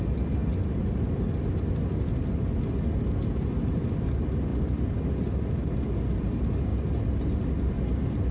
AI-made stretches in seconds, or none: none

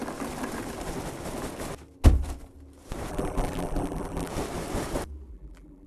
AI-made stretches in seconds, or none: 3.1-4.3 (vocoder, BigVGAN v2); 5.3-5.9

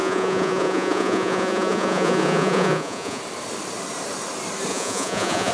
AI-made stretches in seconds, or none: 0.0-3.2 (vocoder, Vocos); 4.7-5.5

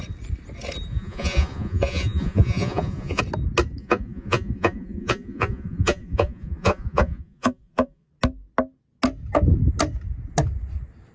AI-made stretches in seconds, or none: 0.9-3.2 (vocoder, Vocos); 3.8-8.1

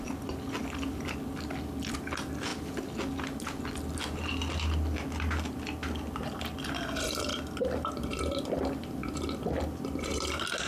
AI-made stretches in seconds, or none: none

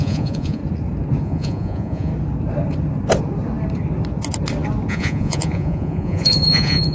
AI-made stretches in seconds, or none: 0.0-0.6 (vocoder, Vocos); 1.2-2.1; 4.9-6.9

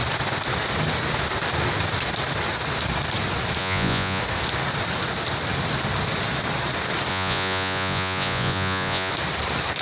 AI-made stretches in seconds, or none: 3.6-4.2 (vocoder, Vocos); 7.1-9.1